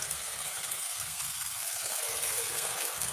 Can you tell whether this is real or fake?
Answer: fake